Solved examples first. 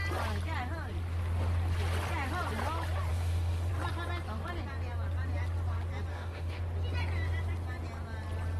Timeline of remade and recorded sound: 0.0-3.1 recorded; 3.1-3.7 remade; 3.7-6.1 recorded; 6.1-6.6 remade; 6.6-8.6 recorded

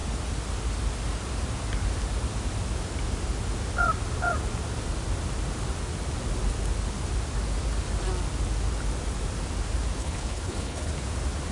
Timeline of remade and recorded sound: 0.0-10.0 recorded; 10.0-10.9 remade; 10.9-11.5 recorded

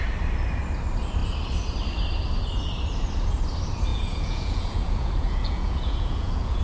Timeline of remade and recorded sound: 0.0-3.9 recorded; 3.9-6.6 remade